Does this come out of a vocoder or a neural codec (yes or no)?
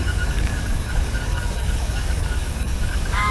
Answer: yes